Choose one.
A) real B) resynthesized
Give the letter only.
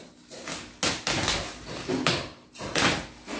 A